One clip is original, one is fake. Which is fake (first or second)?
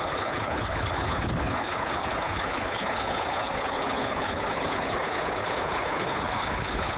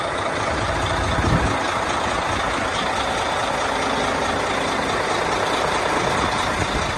first